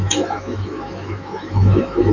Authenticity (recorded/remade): remade